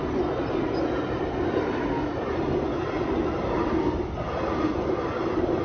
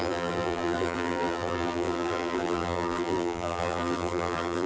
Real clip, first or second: first